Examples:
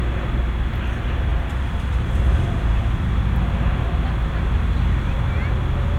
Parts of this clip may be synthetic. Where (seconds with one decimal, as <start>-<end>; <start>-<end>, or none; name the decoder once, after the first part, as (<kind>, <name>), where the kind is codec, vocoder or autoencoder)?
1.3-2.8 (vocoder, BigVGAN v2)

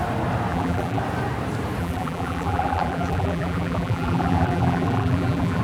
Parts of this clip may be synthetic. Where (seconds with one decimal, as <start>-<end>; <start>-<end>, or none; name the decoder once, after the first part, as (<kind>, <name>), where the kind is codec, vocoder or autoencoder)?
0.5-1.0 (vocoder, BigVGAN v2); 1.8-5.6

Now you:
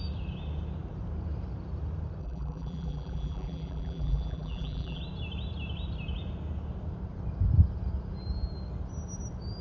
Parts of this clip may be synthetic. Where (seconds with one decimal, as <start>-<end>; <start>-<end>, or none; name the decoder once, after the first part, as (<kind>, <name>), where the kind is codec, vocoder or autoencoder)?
2.2-5.0 (vocoder, BigVGAN v2)

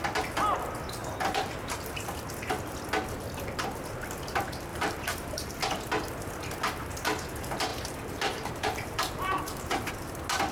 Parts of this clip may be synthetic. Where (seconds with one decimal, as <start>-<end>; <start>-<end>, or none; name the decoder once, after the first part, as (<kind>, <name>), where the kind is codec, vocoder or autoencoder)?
1.0-2.1 (vocoder, BigVGAN v2); 4.7-5.5; 7.7-9.9

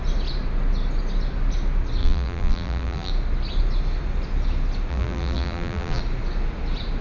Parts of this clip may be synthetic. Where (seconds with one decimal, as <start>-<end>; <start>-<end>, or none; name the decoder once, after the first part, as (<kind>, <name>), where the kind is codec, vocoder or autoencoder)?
2.0-3.1 (vocoder, BigVGAN v2); 4.9-6.0